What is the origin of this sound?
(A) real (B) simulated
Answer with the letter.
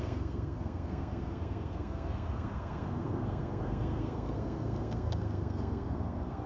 B